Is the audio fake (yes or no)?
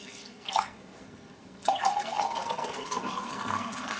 yes